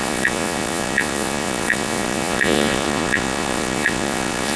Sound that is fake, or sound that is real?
fake